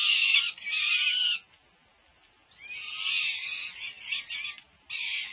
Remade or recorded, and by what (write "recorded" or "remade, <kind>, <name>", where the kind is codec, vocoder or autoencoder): recorded